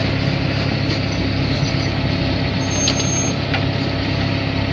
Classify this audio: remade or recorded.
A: recorded